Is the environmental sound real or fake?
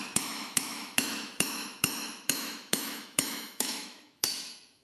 fake